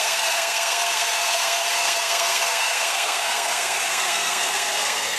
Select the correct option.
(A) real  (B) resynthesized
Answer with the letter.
B